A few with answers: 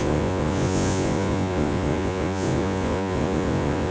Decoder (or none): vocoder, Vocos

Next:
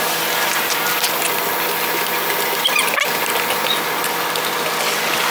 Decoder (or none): none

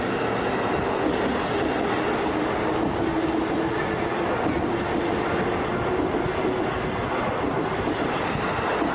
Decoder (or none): none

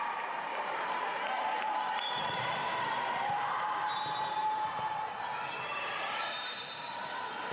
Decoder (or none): vocoder, BigVGAN v2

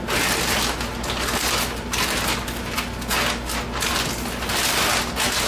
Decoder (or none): none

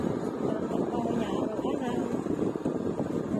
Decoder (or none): none